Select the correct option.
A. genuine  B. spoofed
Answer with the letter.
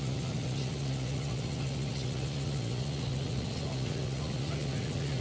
B